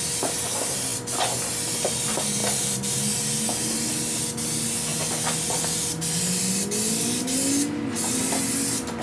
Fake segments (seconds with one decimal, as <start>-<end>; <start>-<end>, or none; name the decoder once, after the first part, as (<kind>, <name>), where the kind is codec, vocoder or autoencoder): none